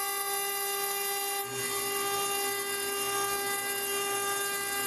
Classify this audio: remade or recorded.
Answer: recorded